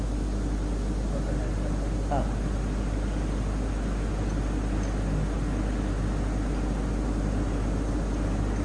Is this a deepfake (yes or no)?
no